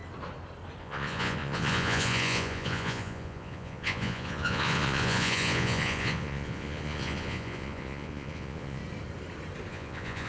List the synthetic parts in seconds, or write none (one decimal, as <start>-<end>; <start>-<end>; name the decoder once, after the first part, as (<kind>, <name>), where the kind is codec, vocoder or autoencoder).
0.8-8.8 (vocoder, Vocos); 9.7-10.3